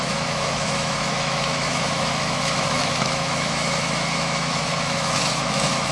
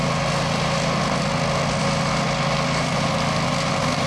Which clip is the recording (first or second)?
second